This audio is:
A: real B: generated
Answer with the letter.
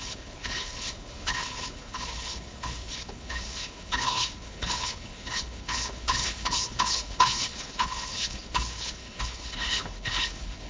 B